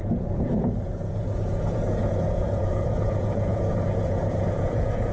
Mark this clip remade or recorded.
remade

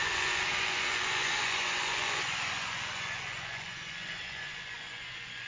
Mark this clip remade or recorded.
remade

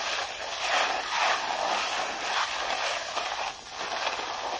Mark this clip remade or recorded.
recorded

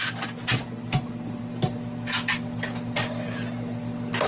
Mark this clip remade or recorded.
recorded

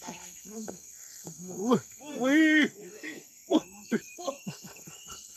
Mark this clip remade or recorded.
remade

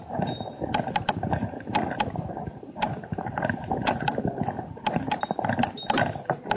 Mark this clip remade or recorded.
recorded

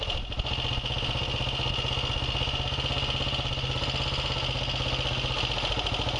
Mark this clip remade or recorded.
recorded